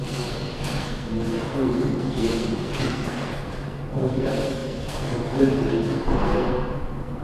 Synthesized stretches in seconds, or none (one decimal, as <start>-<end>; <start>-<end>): 0.0-7.2